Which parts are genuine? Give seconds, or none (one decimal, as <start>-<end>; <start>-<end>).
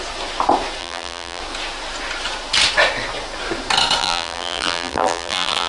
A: 0.0-0.8; 1.4-4.0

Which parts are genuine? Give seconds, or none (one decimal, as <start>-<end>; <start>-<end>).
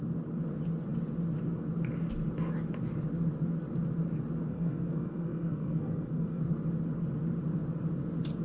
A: 0.0-4.5; 6.4-8.4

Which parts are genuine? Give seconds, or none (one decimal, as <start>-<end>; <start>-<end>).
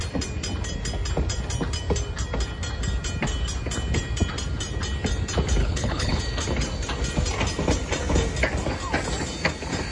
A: 0.0-5.6; 6.2-9.9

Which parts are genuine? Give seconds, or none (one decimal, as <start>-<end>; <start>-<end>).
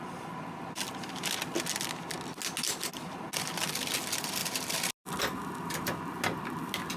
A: 0.0-7.0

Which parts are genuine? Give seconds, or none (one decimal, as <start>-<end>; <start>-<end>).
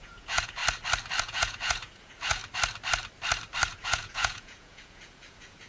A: 0.6-1.2; 2.4-3.7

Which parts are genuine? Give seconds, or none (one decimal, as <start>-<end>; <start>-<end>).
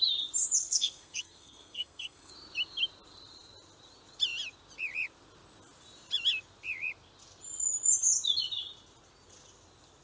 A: 0.0-0.6; 2.3-10.0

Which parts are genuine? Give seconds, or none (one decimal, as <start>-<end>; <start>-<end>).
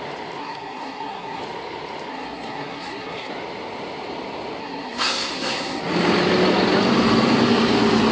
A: 0.0-0.4; 1.4-2.1; 3.3-4.6; 5.8-8.1